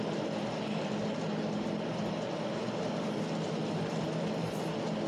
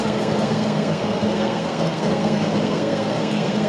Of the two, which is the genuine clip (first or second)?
first